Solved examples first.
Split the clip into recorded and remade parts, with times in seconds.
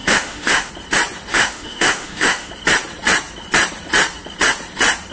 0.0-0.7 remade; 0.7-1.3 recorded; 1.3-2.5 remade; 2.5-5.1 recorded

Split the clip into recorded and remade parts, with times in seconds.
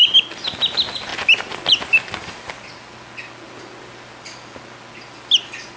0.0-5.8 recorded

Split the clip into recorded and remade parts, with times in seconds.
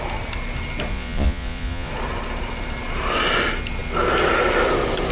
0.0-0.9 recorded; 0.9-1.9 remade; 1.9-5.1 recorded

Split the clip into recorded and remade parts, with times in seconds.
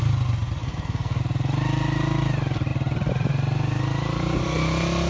0.0-0.6 recorded; 0.6-1.2 remade; 1.2-5.1 recorded